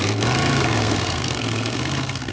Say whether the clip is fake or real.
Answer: fake